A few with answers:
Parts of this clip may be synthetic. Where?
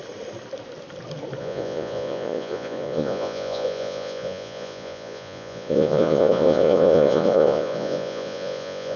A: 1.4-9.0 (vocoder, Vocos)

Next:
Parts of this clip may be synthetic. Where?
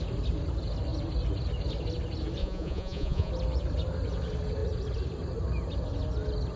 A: 2.4-3.3 (vocoder, Vocos)